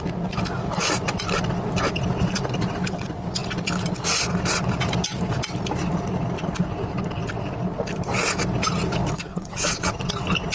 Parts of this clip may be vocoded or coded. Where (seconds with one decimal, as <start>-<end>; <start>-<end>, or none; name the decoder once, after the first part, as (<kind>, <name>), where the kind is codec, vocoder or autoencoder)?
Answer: 9.3-10.1 (vocoder, WaveNeXt)